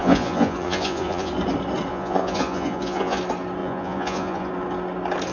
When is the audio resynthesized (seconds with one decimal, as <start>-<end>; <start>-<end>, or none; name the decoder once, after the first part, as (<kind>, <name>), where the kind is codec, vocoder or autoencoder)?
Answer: 0.0-1.3 (vocoder, Vocos); 1.9-3.2; 3.6-4.5